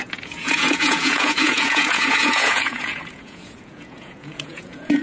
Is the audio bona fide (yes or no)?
no